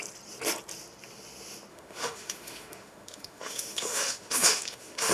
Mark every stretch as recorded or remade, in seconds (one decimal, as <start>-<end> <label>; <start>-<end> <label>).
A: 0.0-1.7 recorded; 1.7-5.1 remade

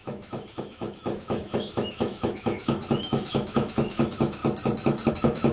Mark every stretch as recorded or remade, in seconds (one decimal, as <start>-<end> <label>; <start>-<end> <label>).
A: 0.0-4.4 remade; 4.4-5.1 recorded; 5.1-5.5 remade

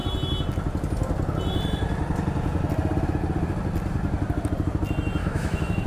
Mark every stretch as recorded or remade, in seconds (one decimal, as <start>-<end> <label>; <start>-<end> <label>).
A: 0.0-5.2 recorded; 5.2-5.9 remade

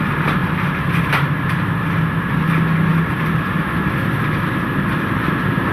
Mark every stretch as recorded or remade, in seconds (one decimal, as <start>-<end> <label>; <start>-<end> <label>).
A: 0.0-5.7 recorded

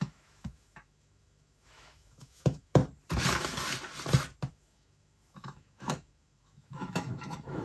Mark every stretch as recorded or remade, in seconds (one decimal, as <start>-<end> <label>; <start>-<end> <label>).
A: 0.0-2.8 remade; 2.8-4.5 recorded; 4.5-7.6 remade